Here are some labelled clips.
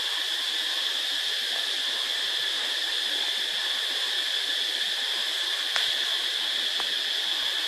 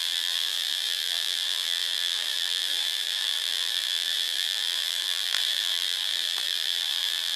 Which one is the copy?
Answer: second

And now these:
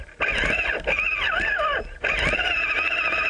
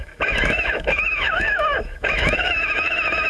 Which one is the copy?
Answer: second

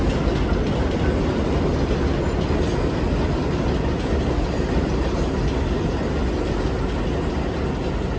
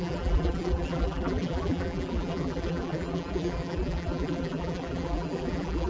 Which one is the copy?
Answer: second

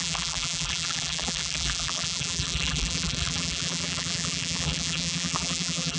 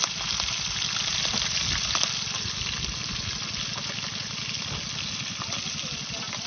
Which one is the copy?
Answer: first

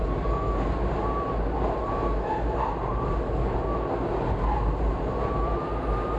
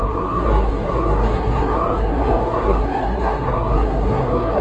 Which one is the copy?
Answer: second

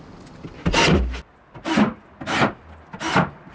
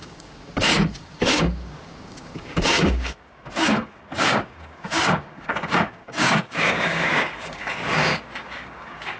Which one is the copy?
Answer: second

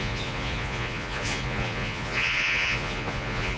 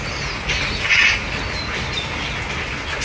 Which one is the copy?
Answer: first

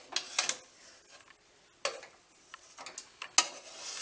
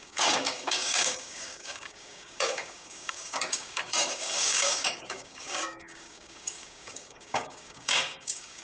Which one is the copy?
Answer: second